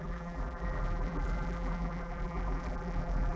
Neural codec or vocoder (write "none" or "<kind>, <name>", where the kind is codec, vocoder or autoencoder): vocoder, BigVGAN v2